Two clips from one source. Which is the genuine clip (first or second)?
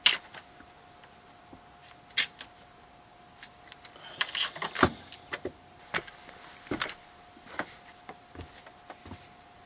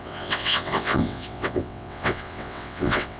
first